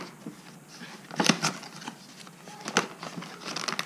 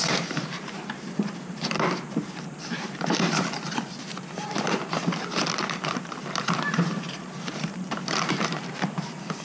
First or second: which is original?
first